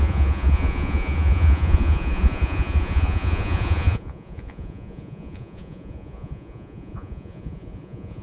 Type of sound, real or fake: fake